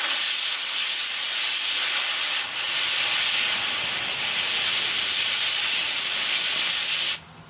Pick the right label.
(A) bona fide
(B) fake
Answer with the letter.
A